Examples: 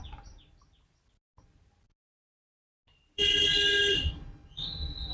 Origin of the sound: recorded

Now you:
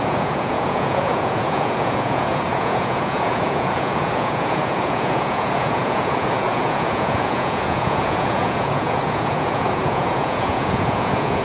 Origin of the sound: remade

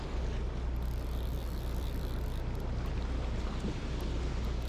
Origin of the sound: recorded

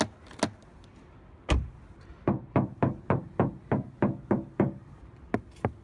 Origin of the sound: recorded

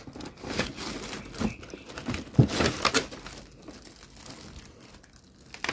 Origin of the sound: recorded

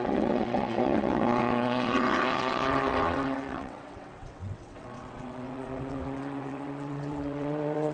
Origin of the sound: remade